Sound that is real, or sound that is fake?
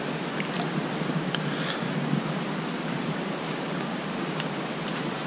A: real